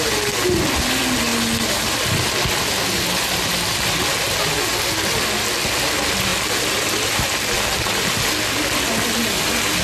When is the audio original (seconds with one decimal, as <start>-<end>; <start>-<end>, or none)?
0.0-9.8